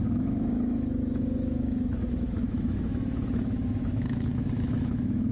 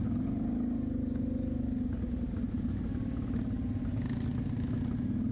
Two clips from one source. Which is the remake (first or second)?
first